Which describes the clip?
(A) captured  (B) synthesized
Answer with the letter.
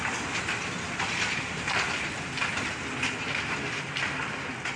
A